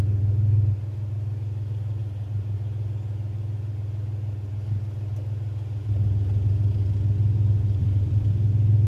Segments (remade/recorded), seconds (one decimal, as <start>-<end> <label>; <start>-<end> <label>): 0.0-7.8 recorded; 7.8-8.3 remade; 8.3-8.9 recorded